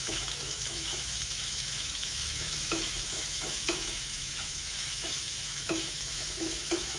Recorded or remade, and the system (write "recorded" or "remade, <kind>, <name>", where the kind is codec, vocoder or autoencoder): remade, autoencoder, DAC-VAE